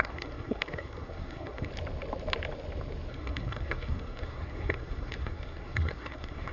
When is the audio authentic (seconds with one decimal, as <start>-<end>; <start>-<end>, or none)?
1.7-3.1